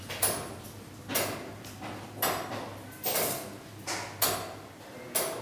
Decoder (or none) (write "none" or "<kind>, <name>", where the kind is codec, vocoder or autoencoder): none